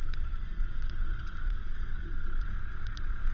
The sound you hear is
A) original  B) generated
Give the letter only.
B